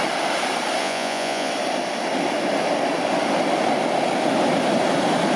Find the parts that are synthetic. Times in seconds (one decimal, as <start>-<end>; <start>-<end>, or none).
0.8-1.5